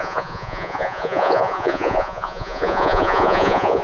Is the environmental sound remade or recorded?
remade